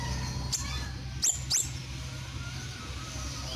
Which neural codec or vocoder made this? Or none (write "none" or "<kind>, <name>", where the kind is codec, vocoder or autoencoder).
none